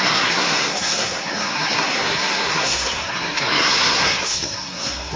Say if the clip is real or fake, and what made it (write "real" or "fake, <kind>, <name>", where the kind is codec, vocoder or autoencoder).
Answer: fake, codec, SNAC